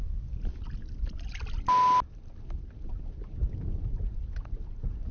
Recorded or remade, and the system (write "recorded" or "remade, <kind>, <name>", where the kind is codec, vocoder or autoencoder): recorded